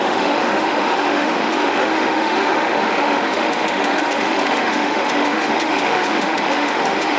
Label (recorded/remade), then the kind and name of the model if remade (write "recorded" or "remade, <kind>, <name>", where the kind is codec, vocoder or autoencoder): remade, autoencoder, DAC-VAE